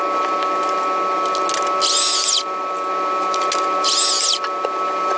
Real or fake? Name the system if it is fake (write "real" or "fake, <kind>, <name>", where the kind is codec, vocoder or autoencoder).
real